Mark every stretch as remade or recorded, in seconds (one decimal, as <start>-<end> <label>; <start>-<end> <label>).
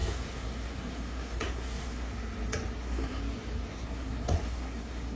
0.0-2.1 remade; 2.1-2.8 recorded; 2.8-3.2 remade; 3.2-3.7 recorded; 3.7-5.2 remade